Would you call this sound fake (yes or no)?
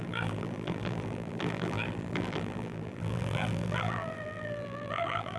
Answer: yes